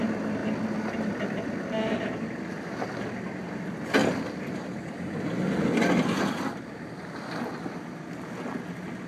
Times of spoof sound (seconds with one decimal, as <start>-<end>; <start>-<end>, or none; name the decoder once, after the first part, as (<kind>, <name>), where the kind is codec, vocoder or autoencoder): none